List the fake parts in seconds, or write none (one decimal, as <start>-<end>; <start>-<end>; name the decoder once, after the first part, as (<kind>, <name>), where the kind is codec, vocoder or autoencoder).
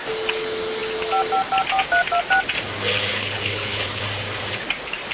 3.1-4.0 (codec, HILCodec)